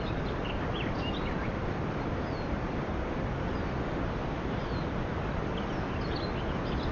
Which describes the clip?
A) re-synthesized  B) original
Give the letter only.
B